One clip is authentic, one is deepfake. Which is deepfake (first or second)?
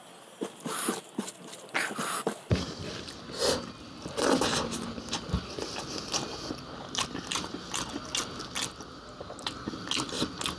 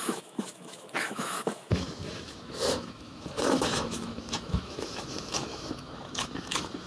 second